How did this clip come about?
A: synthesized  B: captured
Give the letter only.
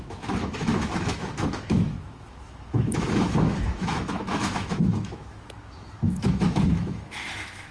A